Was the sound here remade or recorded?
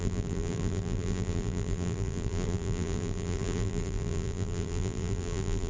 remade